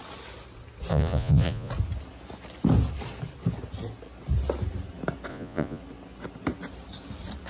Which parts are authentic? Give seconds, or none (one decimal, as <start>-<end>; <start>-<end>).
0.0-0.9; 1.7-5.3; 5.8-7.5